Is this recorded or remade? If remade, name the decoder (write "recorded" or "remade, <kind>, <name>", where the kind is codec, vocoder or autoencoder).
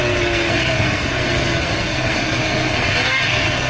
remade, codec, SNAC